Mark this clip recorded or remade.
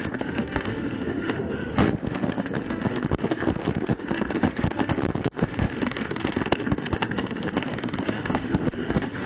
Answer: remade